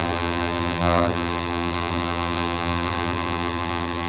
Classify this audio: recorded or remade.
remade